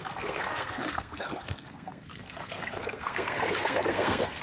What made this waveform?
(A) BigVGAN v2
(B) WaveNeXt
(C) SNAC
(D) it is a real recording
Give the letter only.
C